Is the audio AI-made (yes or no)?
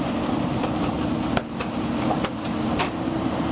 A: yes